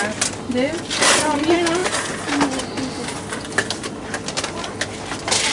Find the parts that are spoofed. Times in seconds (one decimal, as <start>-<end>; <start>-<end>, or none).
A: none